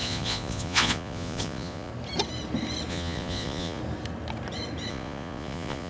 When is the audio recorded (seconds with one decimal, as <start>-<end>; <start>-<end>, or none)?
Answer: 1.9-2.9; 3.8-4.9